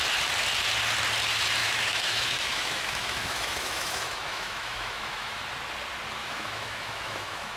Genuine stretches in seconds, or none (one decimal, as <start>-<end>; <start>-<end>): 0.0-1.6; 5.4-6.2